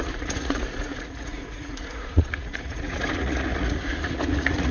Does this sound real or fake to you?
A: fake